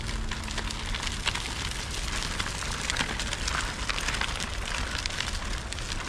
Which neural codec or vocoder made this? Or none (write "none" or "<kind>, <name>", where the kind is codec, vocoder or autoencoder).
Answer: none